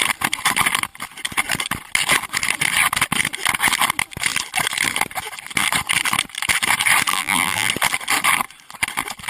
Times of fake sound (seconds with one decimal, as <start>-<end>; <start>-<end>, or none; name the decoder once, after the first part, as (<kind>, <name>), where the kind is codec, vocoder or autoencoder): 7.1-7.7 (vocoder, BigVGAN v2)